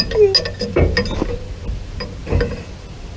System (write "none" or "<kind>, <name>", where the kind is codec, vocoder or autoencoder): none